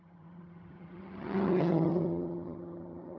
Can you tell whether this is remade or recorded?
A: remade